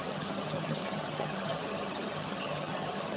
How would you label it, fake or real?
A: fake